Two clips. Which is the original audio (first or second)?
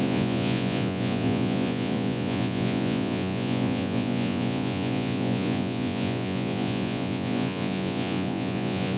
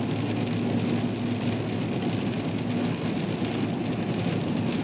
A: second